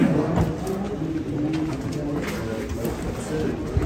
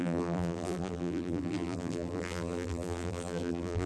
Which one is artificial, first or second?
second